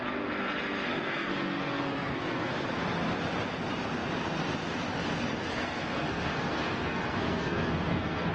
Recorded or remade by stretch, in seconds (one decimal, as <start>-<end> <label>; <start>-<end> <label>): 0.0-0.9 recorded; 0.9-2.5 remade; 2.5-5.5 recorded; 5.5-8.3 remade